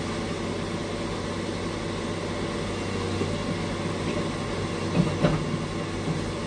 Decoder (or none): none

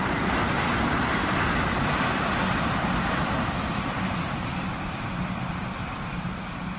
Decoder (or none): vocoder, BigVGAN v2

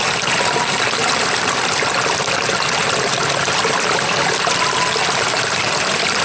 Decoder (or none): none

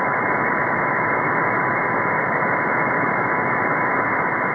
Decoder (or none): autoencoder, DAC-VAE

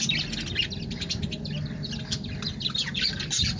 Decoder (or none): none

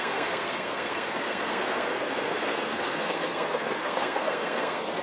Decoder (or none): codec, SNAC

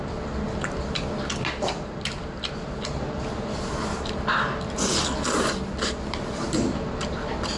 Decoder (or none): none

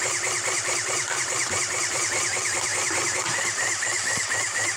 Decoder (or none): vocoder, BigVGAN v2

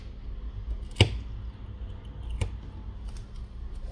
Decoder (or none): none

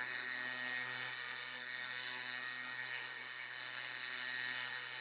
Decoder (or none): codec, SNAC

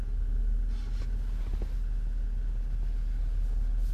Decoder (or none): none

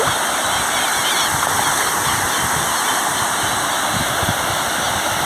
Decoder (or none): none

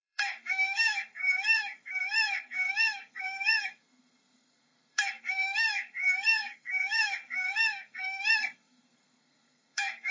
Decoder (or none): codec, SNAC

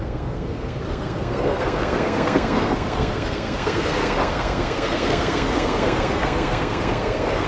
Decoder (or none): codec, SNAC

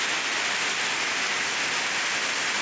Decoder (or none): none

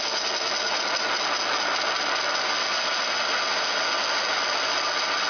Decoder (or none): none